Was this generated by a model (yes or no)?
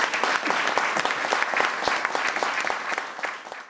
no